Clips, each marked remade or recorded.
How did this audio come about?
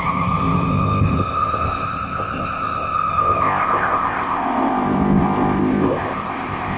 remade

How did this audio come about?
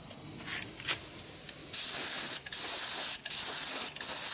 recorded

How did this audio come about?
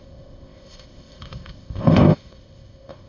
remade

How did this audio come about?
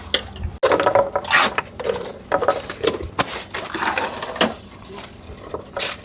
recorded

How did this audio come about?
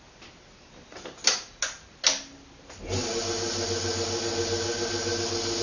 recorded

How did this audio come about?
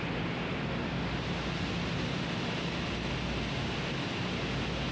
recorded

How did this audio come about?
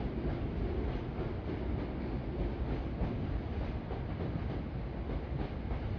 recorded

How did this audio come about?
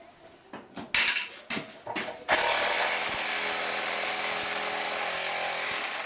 recorded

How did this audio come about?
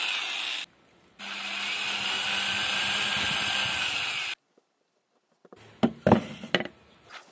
recorded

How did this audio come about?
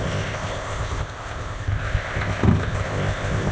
remade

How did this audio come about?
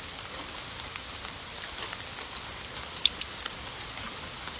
recorded